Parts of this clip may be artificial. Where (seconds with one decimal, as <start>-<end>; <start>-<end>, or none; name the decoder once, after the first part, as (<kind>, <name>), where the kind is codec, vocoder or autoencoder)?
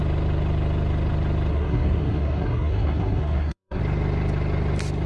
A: 1.5-3.8 (codec, SNAC)